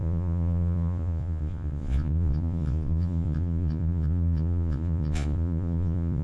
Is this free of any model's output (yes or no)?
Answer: no